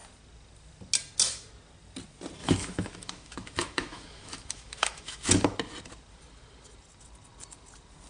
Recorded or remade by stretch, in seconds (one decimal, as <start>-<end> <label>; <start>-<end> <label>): 0.0-2.4 recorded; 2.4-5.3 remade; 5.3-8.1 recorded